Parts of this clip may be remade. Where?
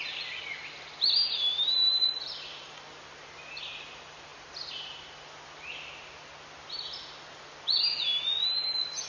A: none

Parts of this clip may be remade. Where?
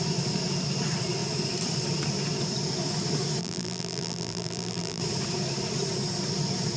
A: 3.4-5.0 (vocoder, BigVGAN v2)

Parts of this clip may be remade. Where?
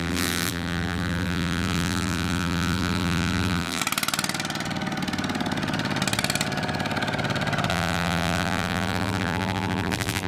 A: 0.0-3.8 (vocoder, BigVGAN v2); 7.7-10.3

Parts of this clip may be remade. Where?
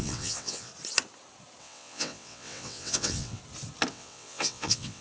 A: 0.0-0.7 (vocoder, WaveNeXt); 1.6-3.4; 3.9-5.0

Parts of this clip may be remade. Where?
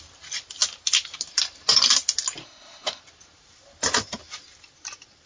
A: 2.4-3.0 (codec, HILCodec)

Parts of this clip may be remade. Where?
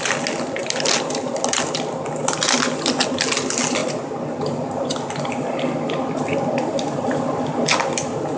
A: none